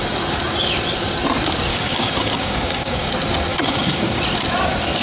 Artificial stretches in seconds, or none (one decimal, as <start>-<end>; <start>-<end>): 1.7-3.1; 3.5-4.2